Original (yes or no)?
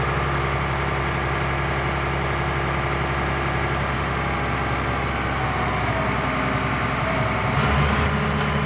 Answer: yes